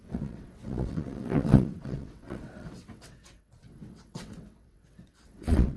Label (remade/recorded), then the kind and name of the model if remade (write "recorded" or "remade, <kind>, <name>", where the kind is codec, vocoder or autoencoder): remade, vocoder, WaveNeXt